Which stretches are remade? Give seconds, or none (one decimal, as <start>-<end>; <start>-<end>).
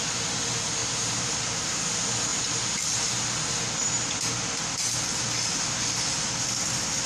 0.8-1.8